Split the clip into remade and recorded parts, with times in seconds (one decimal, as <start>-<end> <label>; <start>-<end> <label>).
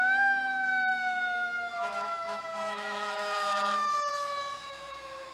0.0-5.3 remade